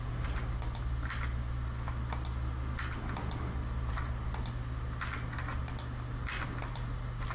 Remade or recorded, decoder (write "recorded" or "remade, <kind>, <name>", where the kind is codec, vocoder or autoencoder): recorded